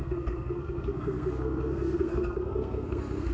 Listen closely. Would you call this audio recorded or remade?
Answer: remade